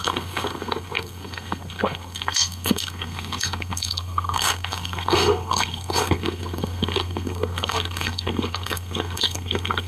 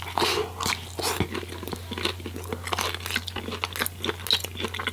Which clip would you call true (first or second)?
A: second